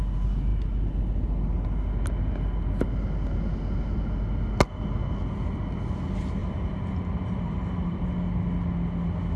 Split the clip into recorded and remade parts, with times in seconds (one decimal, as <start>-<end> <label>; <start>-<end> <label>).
0.0-6.4 recorded; 6.4-8.0 remade; 8.0-9.4 recorded